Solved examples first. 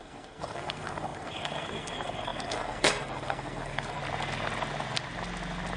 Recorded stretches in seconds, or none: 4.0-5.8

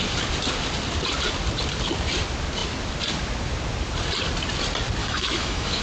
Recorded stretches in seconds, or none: 0.0-5.0

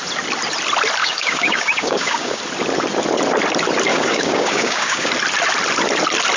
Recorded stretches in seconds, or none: 0.0-1.0; 2.4-3.9; 5.1-6.4

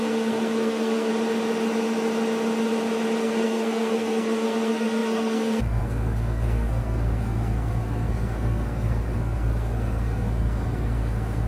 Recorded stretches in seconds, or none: 1.1-3.2

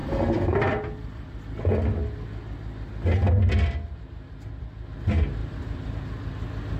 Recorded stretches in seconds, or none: 1.6-5.4; 5.9-6.8

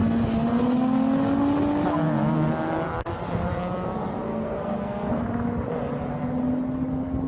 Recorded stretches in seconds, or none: 0.0-4.3; 5.1-7.3

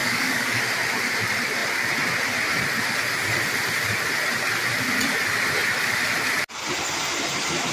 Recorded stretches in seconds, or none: 0.6-7.7

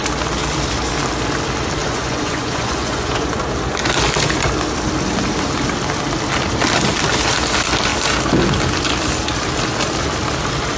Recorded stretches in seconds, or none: 0.0-1.8; 3.4-10.8